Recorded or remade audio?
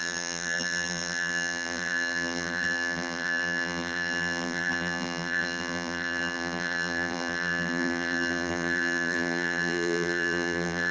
remade